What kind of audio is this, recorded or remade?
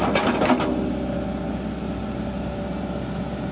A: recorded